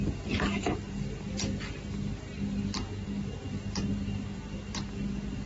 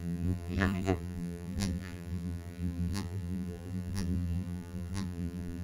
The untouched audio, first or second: first